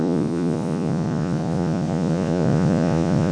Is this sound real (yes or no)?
no